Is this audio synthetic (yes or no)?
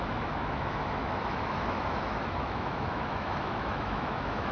yes